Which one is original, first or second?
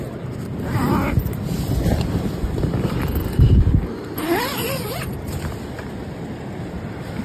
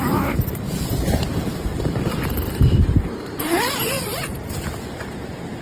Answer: first